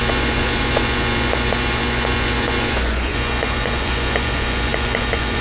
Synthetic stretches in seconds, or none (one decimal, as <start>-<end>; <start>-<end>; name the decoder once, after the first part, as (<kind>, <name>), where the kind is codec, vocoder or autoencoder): 0.0-5.4 (vocoder, Vocos)